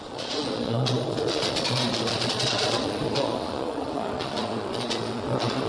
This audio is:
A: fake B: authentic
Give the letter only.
A